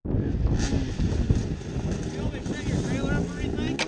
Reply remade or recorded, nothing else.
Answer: recorded